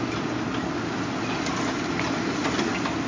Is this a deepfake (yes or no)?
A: no